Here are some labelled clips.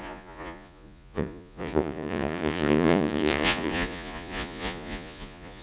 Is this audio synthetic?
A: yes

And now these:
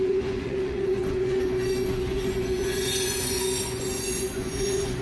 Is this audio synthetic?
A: yes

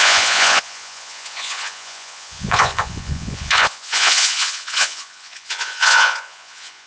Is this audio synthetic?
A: yes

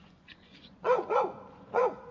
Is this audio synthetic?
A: yes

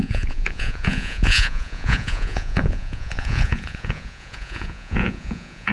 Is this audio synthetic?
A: yes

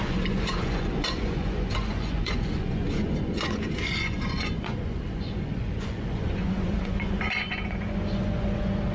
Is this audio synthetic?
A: yes